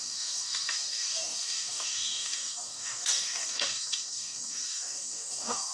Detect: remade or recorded remade